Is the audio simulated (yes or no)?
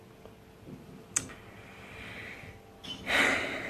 no